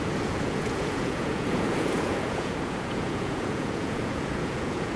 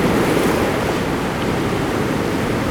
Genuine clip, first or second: second